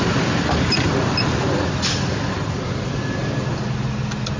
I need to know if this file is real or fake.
real